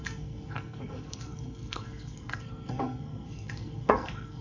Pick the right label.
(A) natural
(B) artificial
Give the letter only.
B